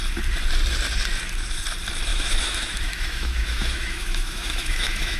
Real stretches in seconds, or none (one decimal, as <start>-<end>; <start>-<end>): 0.0-2.1